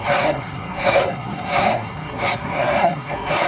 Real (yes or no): no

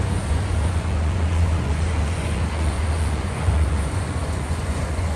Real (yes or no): no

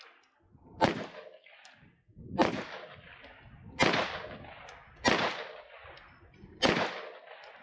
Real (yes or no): yes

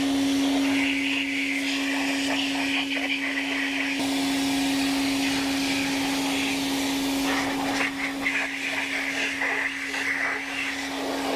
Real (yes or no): yes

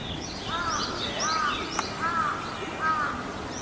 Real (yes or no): yes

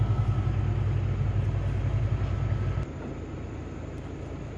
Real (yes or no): yes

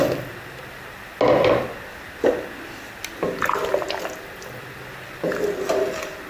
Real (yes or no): yes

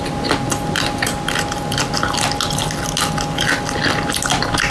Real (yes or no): yes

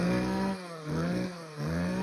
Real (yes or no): no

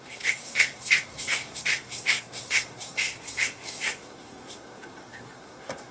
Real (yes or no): no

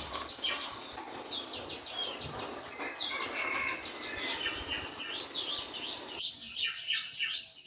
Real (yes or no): yes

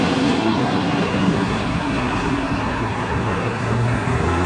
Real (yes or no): no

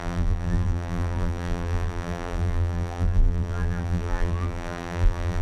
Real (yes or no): no